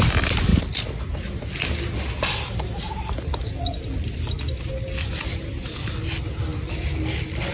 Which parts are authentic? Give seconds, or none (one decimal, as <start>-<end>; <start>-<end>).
0.0-7.5